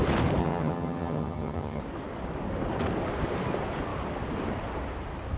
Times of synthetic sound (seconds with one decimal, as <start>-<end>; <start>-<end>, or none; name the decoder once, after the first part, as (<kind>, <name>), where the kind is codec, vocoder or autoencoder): 0.4-1.8 (vocoder, HiFi-GAN)